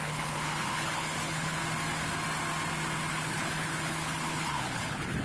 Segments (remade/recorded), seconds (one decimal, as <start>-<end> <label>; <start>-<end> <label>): 0.0-1.6 remade; 1.6-3.1 recorded; 3.1-5.2 remade